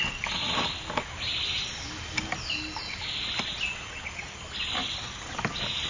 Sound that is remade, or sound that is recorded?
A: recorded